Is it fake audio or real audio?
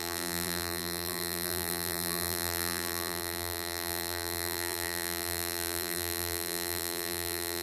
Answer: fake